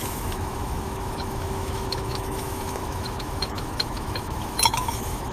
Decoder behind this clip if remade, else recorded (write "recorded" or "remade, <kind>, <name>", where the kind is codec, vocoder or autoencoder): remade, autoencoder, DAC-VAE